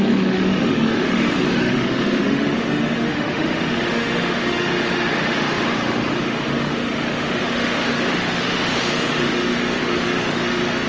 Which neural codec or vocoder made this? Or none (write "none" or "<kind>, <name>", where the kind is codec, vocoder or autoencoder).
autoencoder, DAC-VAE